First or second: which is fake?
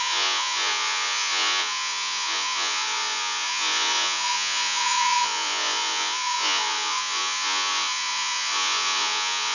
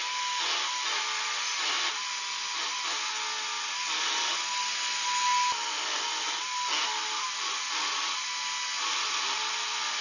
first